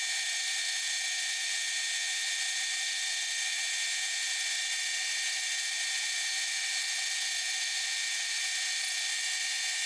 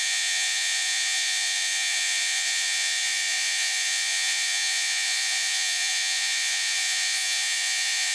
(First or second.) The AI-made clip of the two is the second